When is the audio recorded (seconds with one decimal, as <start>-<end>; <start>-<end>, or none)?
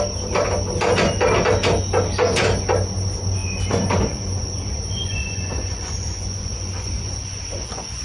0.0-3.4